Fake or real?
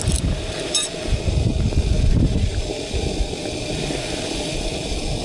real